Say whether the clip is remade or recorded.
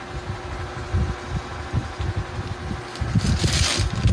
recorded